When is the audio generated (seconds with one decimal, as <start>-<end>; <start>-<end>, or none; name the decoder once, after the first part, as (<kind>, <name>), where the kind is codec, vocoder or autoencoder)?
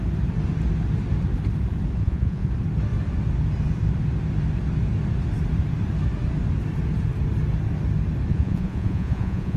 2.0-2.5 (vocoder, Vocos); 8.3-9.6